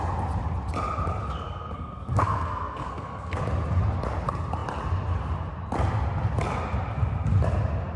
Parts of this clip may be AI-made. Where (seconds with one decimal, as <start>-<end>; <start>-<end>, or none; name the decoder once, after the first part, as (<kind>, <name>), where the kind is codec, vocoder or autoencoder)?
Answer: 1.2-3.4 (codec, SNAC)